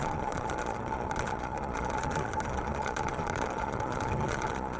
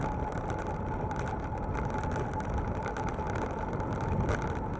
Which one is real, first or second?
second